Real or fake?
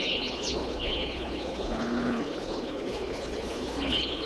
fake